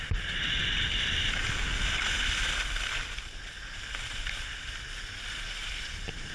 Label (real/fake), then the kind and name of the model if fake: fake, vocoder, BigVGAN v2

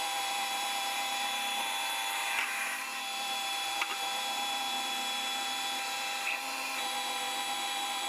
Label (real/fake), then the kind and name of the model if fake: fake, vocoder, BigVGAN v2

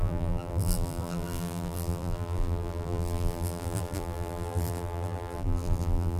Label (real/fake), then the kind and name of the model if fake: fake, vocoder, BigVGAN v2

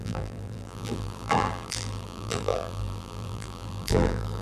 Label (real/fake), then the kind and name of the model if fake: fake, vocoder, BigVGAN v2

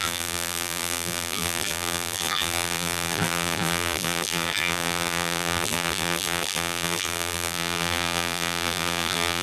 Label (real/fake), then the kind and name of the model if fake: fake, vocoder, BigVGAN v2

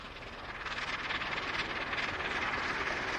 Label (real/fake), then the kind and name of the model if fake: real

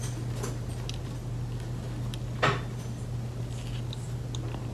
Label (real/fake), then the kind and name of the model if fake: real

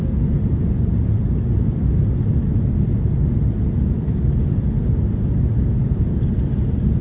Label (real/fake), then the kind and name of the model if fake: real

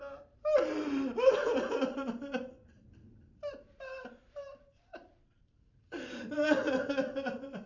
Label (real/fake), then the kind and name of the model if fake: fake, vocoder, BigVGAN v2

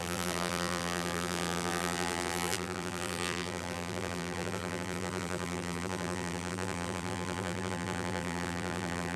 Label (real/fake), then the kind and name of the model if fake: fake, vocoder, BigVGAN v2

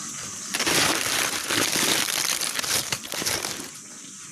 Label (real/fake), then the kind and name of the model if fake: fake, vocoder, BigVGAN v2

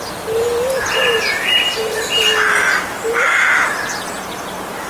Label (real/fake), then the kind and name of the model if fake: real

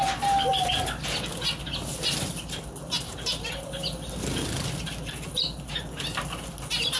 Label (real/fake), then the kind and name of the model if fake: real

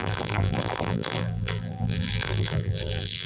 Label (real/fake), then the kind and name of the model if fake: fake, vocoder, BigVGAN v2